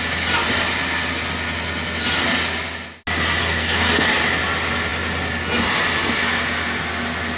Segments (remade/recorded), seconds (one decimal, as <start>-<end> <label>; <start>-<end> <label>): 0.0-3.4 recorded; 3.4-4.1 remade; 4.1-7.4 recorded

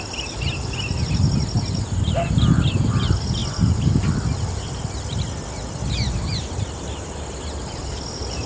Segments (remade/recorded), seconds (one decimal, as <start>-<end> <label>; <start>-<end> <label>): 0.0-8.5 recorded

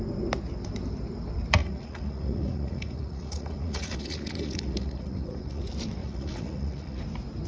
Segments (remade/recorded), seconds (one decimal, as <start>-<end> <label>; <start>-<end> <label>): 0.0-1.6 recorded; 1.6-5.6 remade; 5.6-6.0 recorded; 6.0-7.0 remade; 7.0-7.5 recorded